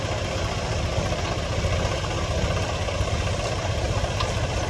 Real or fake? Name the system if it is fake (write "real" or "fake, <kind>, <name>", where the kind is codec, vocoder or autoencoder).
real